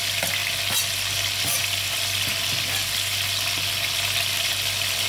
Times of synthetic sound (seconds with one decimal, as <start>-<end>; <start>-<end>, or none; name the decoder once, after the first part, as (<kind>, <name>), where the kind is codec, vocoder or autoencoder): none